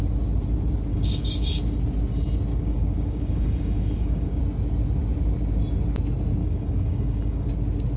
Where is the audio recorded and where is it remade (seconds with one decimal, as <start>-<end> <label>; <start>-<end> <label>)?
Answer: 0.0-0.9 recorded; 0.9-1.6 remade; 1.6-2.5 recorded; 2.5-4.4 remade; 4.4-6.4 recorded; 6.4-7.5 remade; 7.5-8.0 recorded